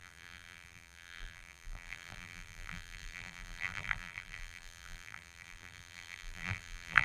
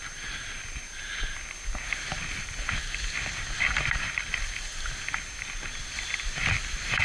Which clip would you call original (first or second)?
second